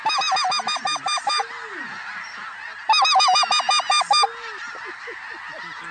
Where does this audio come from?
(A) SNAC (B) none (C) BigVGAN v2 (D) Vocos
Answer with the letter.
B